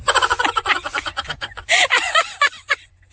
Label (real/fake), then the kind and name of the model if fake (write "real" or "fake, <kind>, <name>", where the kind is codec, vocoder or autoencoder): fake, vocoder, Vocos